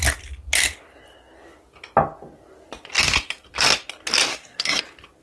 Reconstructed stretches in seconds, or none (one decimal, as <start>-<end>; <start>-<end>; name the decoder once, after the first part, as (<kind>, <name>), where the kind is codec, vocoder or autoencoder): 4.3-4.8 (codec, SNAC)

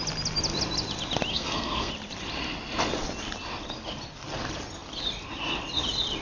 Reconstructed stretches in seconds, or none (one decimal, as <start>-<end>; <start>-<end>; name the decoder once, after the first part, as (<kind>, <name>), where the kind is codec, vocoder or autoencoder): 1.3-1.9 (codec, SNAC)

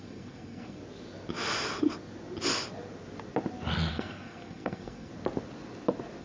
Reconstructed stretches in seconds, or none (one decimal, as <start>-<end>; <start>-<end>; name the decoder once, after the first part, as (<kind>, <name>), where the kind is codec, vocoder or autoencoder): 0.0-0.8 (codec, SNAC); 3.9-5.1

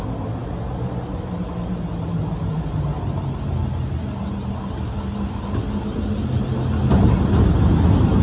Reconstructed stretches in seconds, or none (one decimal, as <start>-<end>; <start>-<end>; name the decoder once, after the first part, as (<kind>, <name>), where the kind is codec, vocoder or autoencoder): none

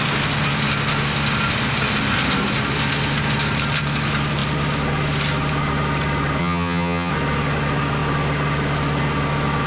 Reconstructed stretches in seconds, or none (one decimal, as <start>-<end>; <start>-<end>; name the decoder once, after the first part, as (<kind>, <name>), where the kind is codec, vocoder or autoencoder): 6.4-7.1 (vocoder, HiFi-GAN)

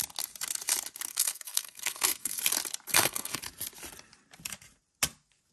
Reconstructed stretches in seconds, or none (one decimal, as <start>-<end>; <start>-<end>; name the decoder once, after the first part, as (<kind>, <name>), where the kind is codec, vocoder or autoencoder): 1.1-2.4 (codec, SNAC); 2.9-3.4

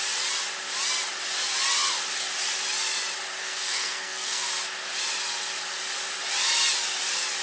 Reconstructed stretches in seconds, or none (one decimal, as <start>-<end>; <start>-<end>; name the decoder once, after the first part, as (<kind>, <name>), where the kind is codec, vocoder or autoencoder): 3.4-4.5 (codec, SNAC)